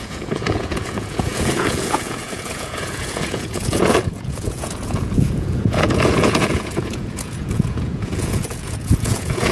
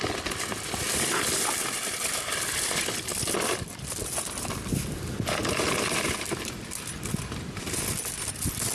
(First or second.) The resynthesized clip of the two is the first